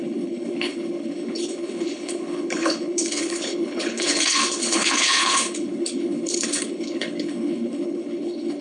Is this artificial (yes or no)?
yes